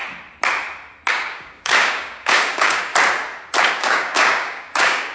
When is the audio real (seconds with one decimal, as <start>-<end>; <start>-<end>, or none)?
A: 0.0-1.1; 2.9-3.7